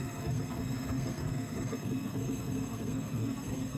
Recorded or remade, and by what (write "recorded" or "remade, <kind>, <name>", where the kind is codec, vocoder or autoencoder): remade, codec, SNAC